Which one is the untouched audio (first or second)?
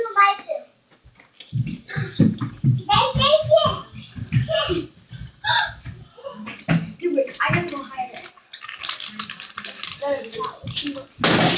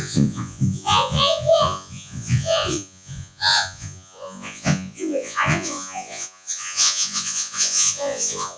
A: first